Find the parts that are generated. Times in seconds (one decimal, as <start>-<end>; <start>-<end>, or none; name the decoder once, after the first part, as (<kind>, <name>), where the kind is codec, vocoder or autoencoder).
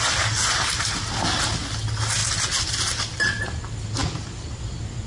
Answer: none